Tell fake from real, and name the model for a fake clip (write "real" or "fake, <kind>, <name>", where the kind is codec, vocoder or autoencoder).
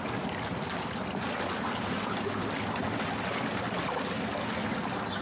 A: real